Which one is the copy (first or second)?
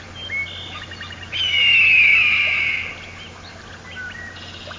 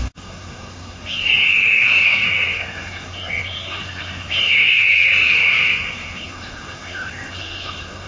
second